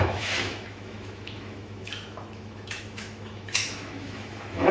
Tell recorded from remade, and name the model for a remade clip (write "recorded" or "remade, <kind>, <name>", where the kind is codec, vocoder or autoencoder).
remade, autoencoder, DAC-VAE